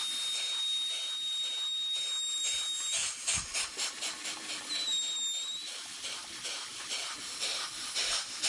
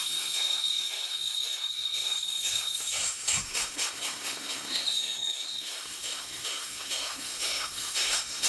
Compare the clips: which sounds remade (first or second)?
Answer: second